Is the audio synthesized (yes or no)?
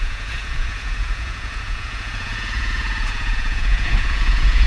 yes